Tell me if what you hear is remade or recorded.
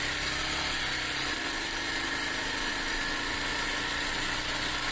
recorded